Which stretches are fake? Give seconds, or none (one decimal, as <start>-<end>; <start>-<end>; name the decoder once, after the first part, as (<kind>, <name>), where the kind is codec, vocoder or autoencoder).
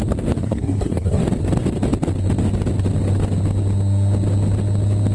0.4-1.2 (codec, SNAC)